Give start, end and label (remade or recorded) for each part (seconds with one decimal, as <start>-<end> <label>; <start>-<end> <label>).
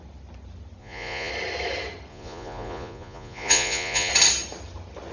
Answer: 0.0-0.8 recorded; 0.8-1.3 remade; 1.3-2.1 recorded; 2.1-4.1 remade; 4.1-5.1 recorded